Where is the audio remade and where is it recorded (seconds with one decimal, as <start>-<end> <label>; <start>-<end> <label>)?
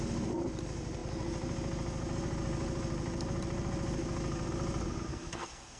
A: 0.0-5.1 recorded; 5.1-5.8 remade